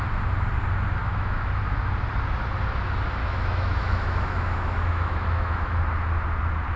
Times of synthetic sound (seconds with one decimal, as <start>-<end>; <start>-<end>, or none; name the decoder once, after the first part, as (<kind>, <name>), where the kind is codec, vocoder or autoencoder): 1.0-1.6 (autoencoder, DAC-VAE); 3.2-5.8